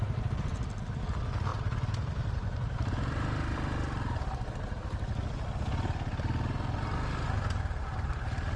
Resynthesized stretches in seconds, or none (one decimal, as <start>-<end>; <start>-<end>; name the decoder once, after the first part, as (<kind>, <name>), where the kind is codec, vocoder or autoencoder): 1.5-4.8 (vocoder, BigVGAN v2)